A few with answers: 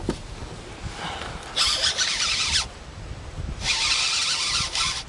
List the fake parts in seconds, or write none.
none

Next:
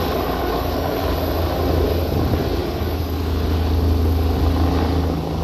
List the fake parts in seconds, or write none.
0.4-1.0 (codec, DAC); 2.6-3.4

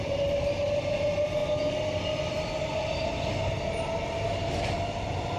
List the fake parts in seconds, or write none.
none

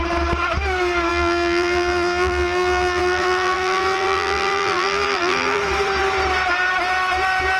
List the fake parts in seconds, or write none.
1.1-5.6 (vocoder, BigVGAN v2)

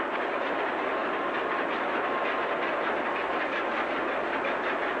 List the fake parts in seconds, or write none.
none

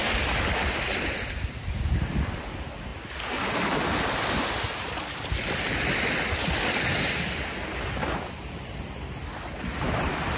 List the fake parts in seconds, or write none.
none